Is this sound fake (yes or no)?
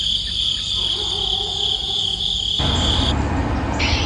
no